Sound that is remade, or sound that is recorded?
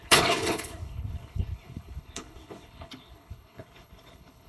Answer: remade